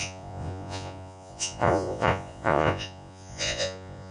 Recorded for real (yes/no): no